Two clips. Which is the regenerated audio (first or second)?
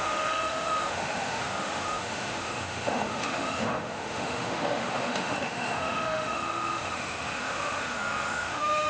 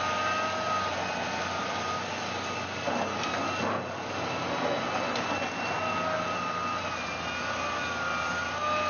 first